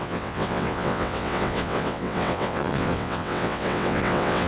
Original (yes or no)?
no